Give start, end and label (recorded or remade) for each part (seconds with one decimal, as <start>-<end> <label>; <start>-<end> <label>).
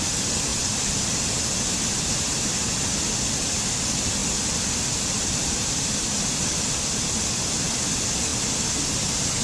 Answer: 0.0-0.5 recorded; 0.5-1.2 remade; 1.2-4.2 recorded; 4.2-6.6 remade; 6.6-9.4 recorded